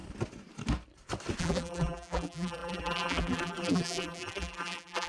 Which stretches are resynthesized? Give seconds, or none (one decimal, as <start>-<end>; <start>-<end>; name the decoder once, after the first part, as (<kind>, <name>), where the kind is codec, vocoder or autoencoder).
1.4-5.1 (vocoder, BigVGAN v2)